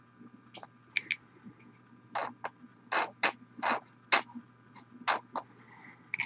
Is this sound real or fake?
real